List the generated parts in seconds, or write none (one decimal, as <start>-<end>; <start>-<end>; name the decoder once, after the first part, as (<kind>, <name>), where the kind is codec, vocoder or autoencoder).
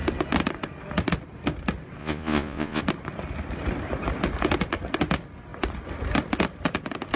2.0-2.8 (vocoder, Vocos)